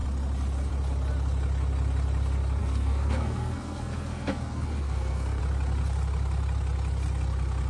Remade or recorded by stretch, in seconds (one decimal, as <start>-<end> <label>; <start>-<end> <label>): 0.0-2.6 recorded; 2.6-5.4 remade; 5.4-7.7 recorded